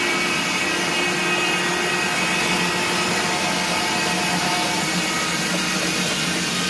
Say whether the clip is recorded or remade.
recorded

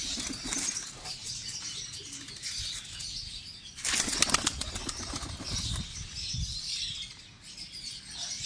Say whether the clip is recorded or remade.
recorded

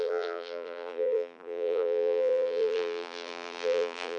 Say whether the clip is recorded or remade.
remade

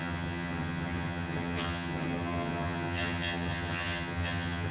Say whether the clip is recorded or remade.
remade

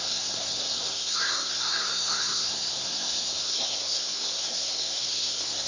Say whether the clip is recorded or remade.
remade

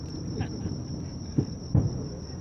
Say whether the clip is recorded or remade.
remade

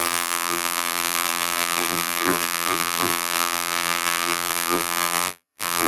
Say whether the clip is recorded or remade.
remade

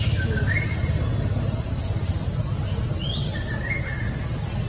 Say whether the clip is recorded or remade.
recorded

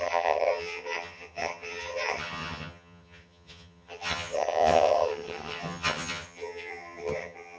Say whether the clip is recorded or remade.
remade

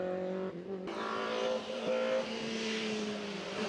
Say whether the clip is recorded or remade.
recorded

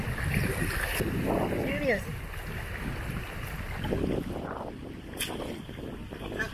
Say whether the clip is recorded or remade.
recorded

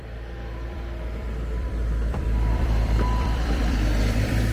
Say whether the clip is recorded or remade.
remade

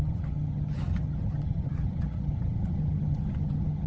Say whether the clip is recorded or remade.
remade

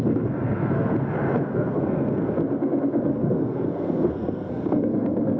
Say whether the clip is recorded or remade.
remade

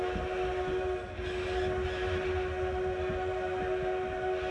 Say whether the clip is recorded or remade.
recorded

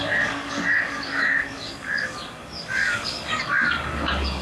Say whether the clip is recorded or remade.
remade